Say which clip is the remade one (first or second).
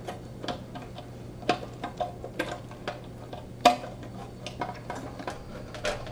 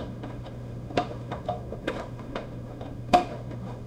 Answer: second